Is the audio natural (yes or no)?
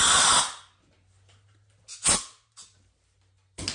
yes